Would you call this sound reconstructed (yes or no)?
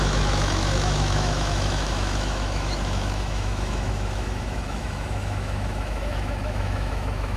yes